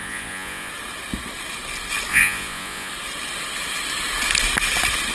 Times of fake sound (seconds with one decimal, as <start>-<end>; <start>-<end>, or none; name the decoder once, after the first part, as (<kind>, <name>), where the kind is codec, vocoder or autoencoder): 0.0-0.7 (vocoder, Vocos); 2.1-2.9